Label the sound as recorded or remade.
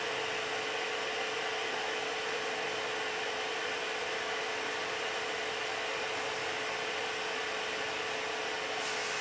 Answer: recorded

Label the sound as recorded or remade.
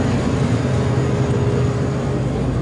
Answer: recorded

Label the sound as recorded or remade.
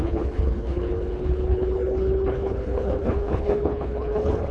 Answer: remade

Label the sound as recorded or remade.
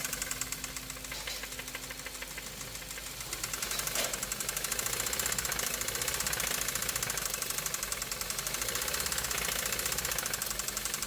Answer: recorded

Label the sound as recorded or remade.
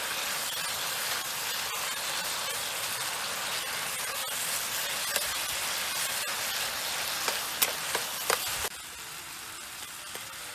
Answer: recorded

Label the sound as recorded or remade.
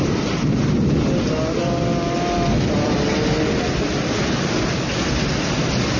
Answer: recorded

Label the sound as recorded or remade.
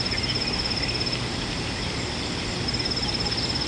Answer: recorded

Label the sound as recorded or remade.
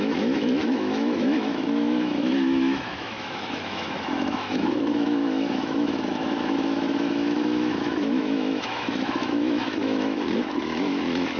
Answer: remade